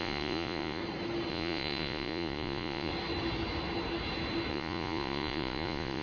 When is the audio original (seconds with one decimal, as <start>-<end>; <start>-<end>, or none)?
0.8-1.3; 2.9-4.5